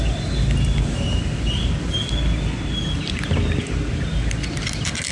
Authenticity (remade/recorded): recorded